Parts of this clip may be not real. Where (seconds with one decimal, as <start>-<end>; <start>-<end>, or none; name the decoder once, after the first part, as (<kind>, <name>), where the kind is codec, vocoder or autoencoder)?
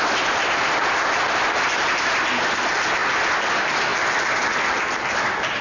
none